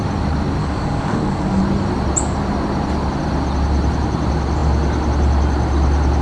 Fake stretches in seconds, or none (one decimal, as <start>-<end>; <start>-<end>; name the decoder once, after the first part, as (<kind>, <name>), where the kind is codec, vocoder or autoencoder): 0.6-1.6 (codec, DAC)

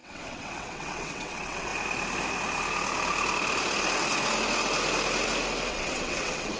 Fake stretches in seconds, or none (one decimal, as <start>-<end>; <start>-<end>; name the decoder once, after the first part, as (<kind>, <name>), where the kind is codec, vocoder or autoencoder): 0.0-1.7 (vocoder, WaveNeXt); 5.7-6.6

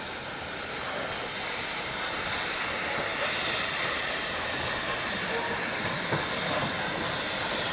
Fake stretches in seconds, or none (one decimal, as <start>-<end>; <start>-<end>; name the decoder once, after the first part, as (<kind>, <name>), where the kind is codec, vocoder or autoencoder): none

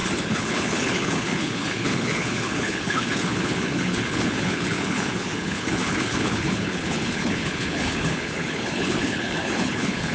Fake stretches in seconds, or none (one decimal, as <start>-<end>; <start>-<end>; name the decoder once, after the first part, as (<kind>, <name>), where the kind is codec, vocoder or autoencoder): 0.0-10.1 (codec, HILCodec)

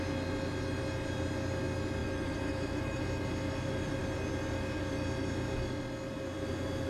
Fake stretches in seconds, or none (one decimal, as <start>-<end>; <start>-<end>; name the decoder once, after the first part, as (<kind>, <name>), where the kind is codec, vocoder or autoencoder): 2.0-3.0 (autoencoder, DAC-VAE)